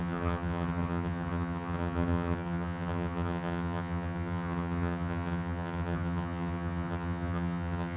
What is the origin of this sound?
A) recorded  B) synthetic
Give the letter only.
B